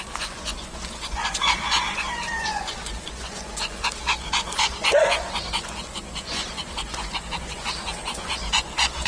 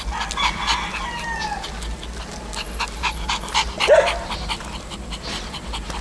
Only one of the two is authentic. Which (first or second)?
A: second